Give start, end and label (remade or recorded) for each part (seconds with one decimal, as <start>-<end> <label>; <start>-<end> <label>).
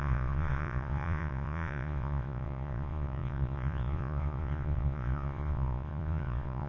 0.0-6.7 remade